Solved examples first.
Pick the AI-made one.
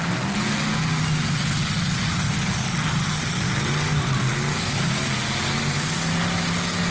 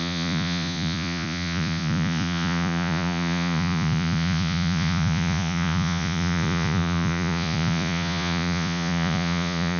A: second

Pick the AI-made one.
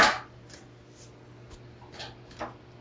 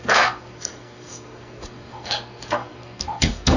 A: second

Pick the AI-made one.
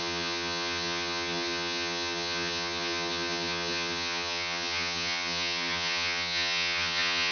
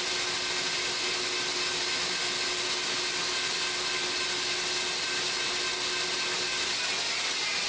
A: first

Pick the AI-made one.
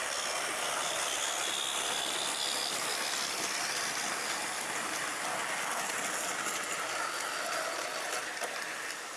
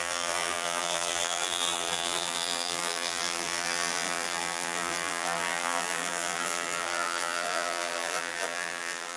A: second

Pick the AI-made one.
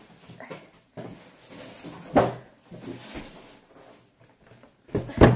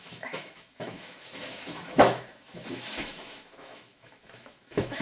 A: second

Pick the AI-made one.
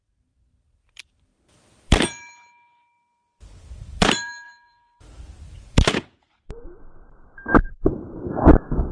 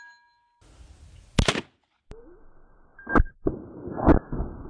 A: first